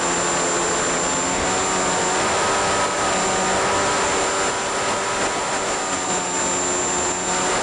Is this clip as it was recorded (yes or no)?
yes